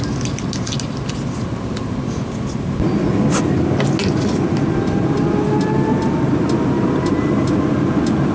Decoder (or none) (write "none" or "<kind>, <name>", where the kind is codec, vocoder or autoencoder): none